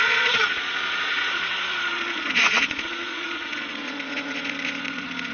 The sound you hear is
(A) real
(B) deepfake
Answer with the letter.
B